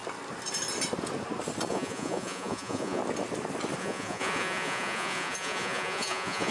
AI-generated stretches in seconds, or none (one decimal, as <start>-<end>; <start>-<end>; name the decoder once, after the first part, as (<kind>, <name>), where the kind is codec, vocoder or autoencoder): 1.7-3.0 (vocoder, Vocos); 3.8-6.5